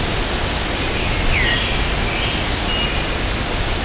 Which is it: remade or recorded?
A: recorded